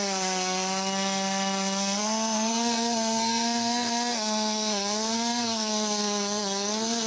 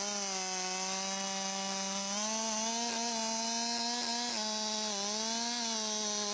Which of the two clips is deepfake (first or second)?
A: first